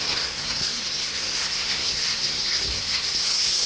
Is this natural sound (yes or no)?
no